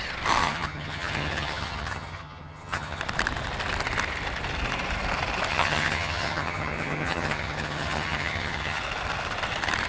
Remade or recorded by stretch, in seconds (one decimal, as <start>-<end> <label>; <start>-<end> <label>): 0.0-0.4 recorded; 0.4-3.0 remade; 3.0-5.5 recorded; 5.5-8.8 remade; 8.8-9.9 recorded